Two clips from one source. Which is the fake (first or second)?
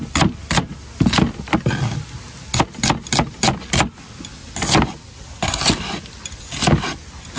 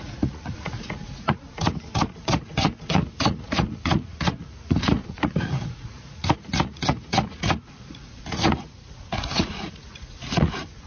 second